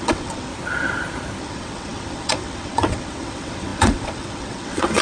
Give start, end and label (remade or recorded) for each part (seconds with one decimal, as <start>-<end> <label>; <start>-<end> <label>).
0.0-0.5 remade; 0.5-1.4 recorded; 1.4-5.0 remade